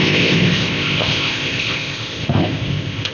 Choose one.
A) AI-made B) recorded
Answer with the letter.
A